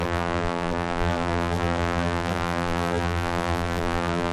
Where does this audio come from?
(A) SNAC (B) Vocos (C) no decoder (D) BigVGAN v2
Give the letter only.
D